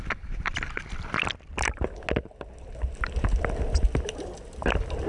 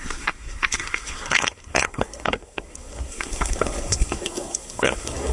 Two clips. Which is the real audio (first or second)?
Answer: first